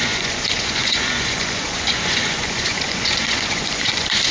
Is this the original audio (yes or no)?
no